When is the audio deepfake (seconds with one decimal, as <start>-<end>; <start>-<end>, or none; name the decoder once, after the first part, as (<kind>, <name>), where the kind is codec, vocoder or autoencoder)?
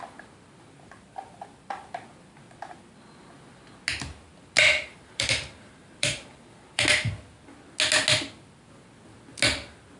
4.9-7.1 (vocoder, BigVGAN v2)